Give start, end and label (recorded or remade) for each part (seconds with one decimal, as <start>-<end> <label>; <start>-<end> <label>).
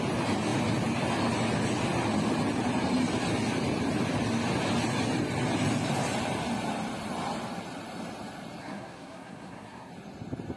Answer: 0.0-8.6 recorded; 8.6-9.9 remade; 9.9-10.6 recorded